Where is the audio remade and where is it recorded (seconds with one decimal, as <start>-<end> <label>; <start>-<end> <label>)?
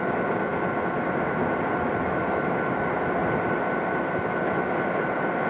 0.0-5.5 recorded